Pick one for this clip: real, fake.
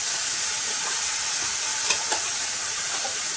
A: fake